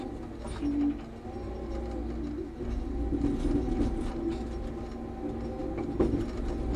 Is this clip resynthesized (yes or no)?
no